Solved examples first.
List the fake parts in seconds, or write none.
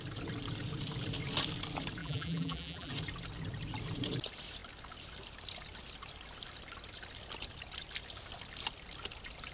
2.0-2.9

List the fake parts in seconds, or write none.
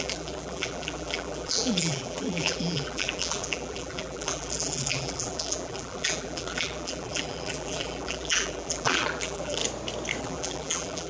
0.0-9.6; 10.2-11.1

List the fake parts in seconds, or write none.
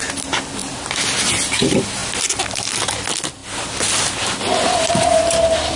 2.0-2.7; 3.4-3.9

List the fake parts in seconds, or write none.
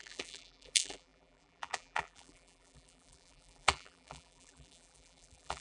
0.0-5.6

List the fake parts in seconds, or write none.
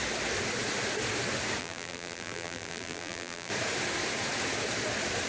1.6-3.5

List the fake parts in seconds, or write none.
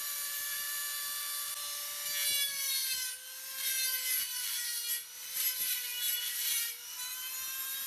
0.0-1.5; 5.3-7.9